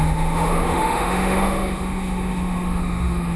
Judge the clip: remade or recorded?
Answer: remade